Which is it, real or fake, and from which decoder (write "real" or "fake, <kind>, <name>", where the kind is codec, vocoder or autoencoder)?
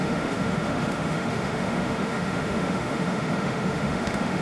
fake, autoencoder, DAC-VAE